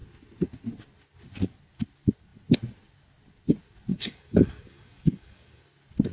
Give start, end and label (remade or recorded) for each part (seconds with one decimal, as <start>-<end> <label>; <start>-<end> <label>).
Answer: 0.0-3.9 recorded; 3.9-5.6 remade; 5.6-6.1 recorded